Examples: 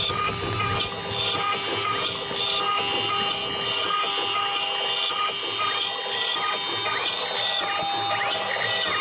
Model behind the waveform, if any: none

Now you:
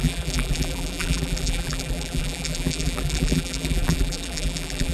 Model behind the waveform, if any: vocoder, BigVGAN v2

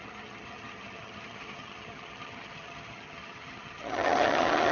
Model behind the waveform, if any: vocoder, HiFi-GAN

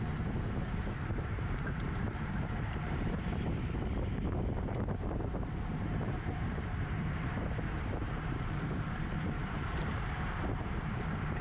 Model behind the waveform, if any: vocoder, BigVGAN v2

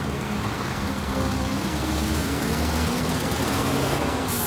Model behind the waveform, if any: codec, SNAC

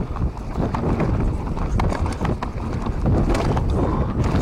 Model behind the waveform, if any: none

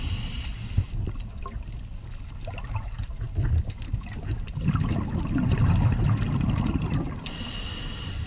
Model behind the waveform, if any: none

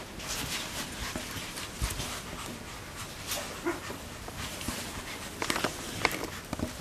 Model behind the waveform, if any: none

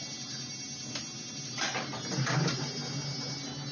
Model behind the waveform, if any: none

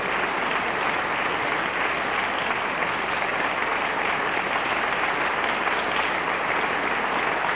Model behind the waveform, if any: none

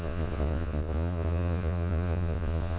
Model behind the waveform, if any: vocoder, Vocos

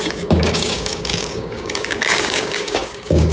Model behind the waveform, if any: codec, DAC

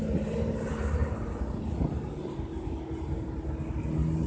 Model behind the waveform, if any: none